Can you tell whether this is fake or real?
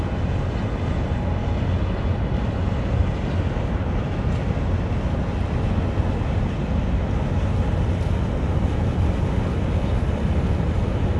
real